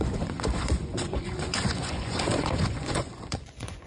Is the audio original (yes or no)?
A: no